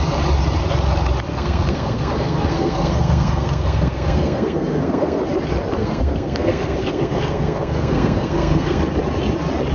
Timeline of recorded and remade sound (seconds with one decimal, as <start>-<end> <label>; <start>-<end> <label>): 0.0-1.3 recorded; 1.3-5.2 remade; 5.2-5.8 recorded; 5.8-8.8 remade; 8.8-9.7 recorded